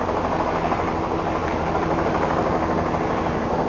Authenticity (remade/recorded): recorded